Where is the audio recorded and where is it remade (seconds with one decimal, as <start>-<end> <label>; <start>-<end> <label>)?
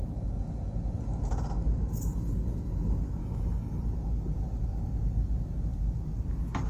0.0-3.2 recorded; 3.2-3.8 remade; 3.8-6.7 recorded